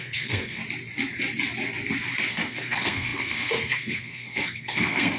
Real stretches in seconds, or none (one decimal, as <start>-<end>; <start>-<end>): 0.6-2.3